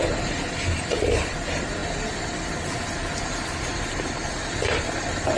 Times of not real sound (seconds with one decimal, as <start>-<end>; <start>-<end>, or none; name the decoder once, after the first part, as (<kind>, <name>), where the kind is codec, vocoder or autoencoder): none